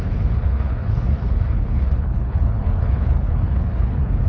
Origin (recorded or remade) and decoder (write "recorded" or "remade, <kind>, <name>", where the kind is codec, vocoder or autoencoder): remade, codec, HILCodec